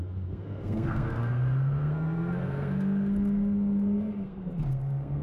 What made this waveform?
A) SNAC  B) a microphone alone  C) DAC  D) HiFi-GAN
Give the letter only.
A